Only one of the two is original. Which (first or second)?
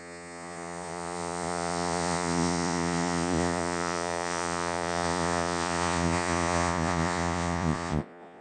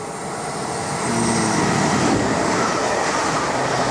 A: second